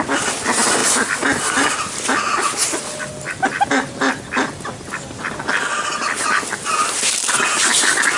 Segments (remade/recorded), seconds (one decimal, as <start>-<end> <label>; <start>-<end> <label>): 0.0-8.2 recorded